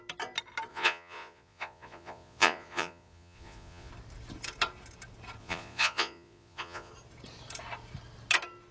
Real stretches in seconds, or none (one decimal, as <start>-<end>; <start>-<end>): 0.0-0.7; 3.9-5.4; 6.9-8.7